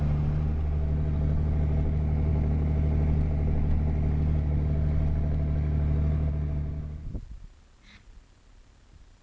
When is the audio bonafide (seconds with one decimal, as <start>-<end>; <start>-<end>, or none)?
0.0-9.2